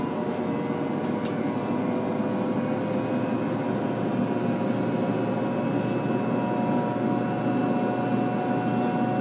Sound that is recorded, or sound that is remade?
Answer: recorded